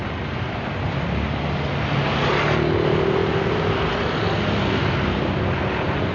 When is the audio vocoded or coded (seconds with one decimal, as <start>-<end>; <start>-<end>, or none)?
none